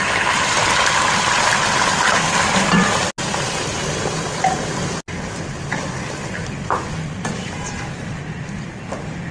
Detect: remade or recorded recorded